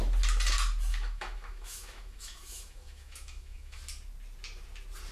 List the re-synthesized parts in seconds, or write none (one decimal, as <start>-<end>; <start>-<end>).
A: 0.9-3.8